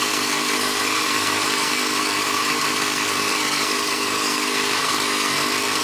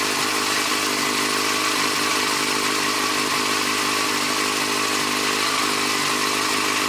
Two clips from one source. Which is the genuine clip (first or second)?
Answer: second